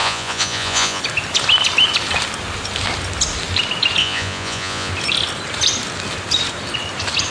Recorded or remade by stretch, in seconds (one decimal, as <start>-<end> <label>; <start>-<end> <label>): 0.0-1.0 remade; 1.0-4.0 recorded; 4.0-4.9 remade; 4.9-7.3 recorded